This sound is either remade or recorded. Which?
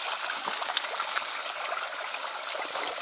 recorded